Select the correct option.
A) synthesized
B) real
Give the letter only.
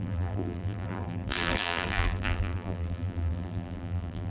A